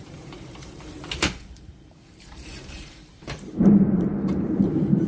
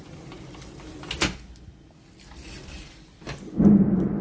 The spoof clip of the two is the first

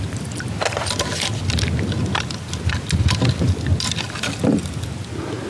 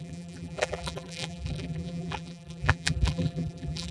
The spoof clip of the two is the second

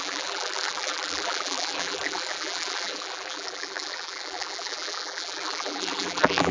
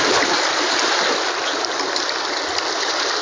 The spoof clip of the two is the first